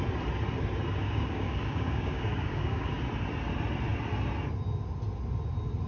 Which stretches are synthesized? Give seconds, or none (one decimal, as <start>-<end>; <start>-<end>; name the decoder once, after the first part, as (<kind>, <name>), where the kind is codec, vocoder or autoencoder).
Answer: 1.0-2.9 (codec, DAC)